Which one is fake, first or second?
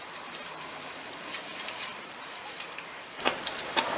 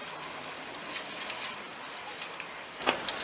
first